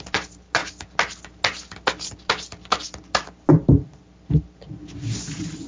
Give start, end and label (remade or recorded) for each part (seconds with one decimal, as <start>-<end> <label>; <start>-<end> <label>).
0.0-5.7 recorded